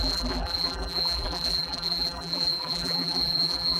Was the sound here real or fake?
fake